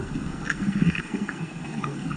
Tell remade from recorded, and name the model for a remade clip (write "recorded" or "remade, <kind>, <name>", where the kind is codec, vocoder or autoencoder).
remade, codec, SNAC